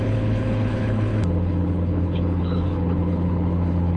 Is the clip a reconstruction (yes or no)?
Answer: yes